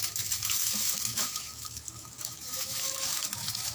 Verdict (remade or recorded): remade